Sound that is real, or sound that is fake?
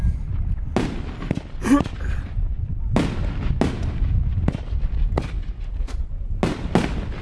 real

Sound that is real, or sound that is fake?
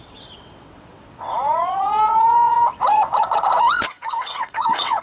fake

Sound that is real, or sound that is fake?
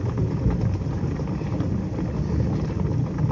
real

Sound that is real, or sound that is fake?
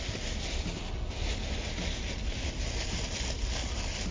real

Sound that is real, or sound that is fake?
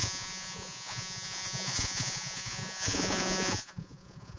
fake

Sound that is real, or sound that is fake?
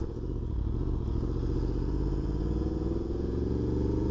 fake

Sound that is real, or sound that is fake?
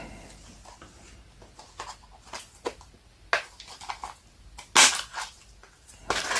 real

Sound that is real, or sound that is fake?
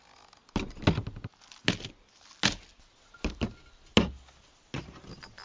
real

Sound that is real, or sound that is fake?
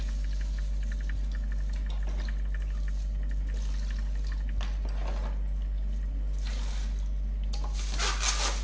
real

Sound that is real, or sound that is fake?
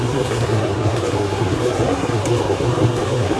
fake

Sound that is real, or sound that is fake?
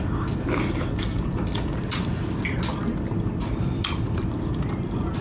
real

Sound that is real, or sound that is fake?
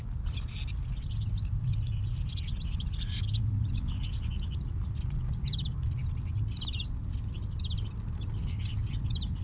real